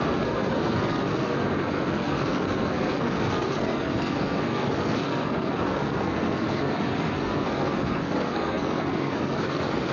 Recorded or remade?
remade